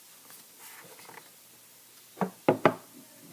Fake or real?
real